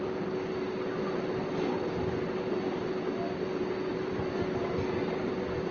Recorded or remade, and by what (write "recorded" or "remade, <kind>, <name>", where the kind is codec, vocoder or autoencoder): recorded